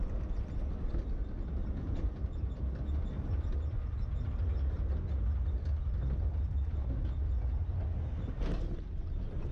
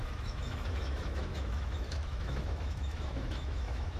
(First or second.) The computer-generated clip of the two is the second